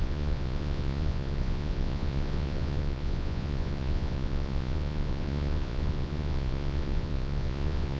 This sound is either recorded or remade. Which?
remade